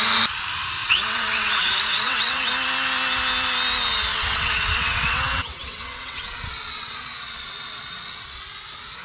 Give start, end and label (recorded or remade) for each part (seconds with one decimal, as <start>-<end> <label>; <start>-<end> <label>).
0.0-0.8 recorded; 0.8-2.5 remade; 2.5-4.1 recorded; 4.1-8.4 remade; 8.4-9.0 recorded